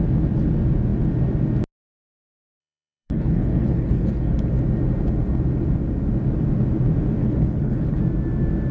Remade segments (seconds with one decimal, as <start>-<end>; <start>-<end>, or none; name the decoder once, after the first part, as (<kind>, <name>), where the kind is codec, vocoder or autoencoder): 2.6-4.1 (codec, HILCodec); 7.2-8.0